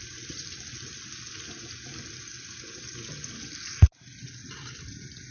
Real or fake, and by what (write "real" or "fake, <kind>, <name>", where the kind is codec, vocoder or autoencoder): real